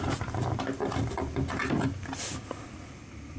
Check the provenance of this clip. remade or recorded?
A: recorded